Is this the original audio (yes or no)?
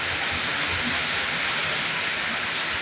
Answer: yes